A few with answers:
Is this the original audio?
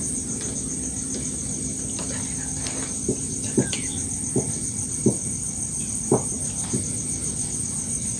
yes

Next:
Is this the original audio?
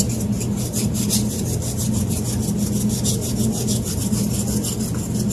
yes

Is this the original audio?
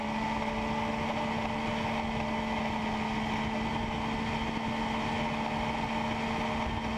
yes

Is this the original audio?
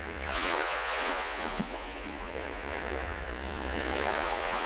no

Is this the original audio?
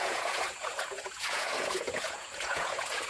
no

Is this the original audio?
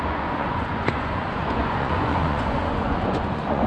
no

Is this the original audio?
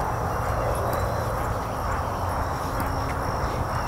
yes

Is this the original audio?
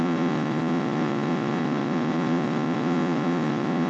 no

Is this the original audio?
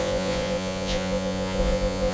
no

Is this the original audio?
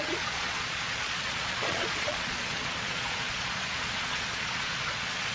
no